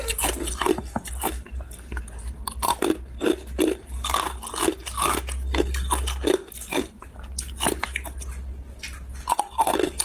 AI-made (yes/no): no